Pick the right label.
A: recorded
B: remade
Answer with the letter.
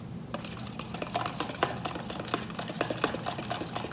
A